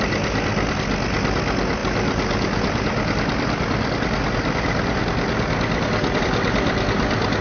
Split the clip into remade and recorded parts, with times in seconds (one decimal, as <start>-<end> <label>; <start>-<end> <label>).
0.0-7.4 recorded